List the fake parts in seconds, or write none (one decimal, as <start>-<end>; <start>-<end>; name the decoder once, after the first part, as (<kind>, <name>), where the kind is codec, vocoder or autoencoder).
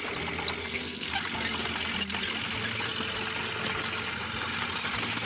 0.6-1.1 (codec, SNAC)